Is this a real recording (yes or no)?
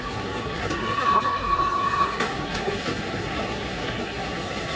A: no